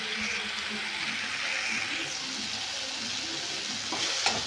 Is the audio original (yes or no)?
yes